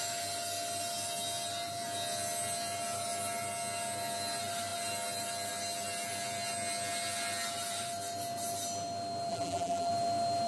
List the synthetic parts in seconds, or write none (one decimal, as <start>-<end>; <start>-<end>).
9.3-9.9